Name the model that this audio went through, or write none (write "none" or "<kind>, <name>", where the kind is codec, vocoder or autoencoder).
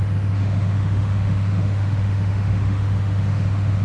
autoencoder, DAC-VAE